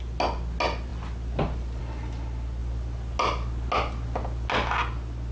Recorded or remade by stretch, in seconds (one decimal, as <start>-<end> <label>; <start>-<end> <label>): 0.0-5.3 recorded

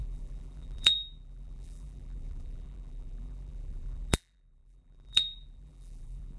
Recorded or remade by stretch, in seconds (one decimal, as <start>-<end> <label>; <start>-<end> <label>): 0.0-6.4 remade

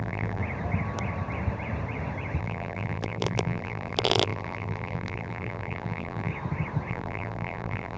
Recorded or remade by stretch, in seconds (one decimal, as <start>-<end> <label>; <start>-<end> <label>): 0.0-0.4 remade; 0.4-2.4 recorded; 2.4-6.3 remade; 6.3-6.9 recorded; 6.9-8.0 remade

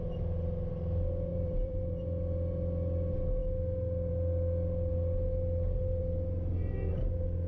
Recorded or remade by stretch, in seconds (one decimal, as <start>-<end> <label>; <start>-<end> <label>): 0.0-1.3 recorded; 1.3-2.0 remade; 2.0-6.0 recorded; 6.0-6.9 remade; 6.9-7.5 recorded

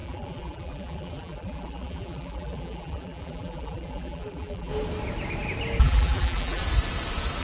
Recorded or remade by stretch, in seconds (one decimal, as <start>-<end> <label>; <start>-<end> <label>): 0.0-4.7 remade; 4.7-5.8 recorded; 5.8-6.6 remade; 6.6-7.4 recorded

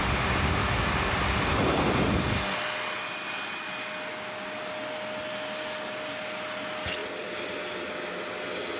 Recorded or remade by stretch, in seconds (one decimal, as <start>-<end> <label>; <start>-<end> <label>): 0.0-8.8 recorded

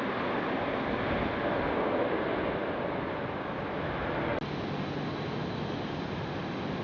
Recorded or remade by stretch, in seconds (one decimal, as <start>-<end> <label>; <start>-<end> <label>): 0.0-2.6 recorded; 2.6-3.7 remade; 3.7-6.8 recorded

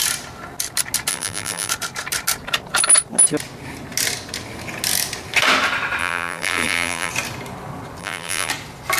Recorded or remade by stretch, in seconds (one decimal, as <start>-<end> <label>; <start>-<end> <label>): 0.0-1.1 recorded; 1.1-1.7 remade; 1.7-6.0 recorded; 6.0-7.1 remade; 7.1-8.0 recorded; 8.0-8.5 remade; 8.5-9.0 recorded